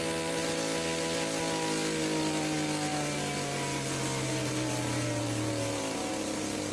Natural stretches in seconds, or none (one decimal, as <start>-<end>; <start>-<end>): 0.0-6.7

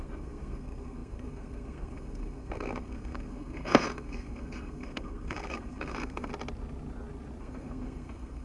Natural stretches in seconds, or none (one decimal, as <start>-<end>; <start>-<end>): 6.3-7.4

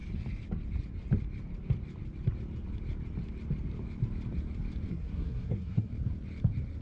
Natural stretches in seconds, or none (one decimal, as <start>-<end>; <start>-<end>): 0.0-4.9; 5.9-6.8

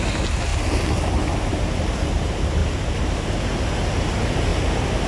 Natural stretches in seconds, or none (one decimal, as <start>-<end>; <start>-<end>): 0.0-2.6; 3.4-5.1

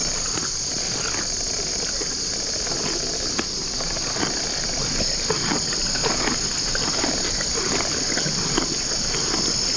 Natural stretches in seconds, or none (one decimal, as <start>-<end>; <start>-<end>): none

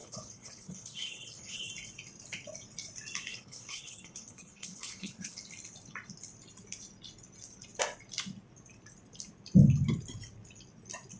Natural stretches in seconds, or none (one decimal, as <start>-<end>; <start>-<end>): 1.7-3.3; 5.4-11.2